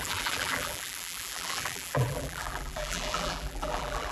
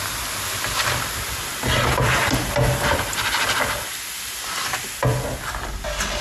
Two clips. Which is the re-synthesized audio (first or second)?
first